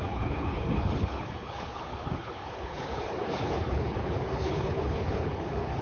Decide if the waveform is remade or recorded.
remade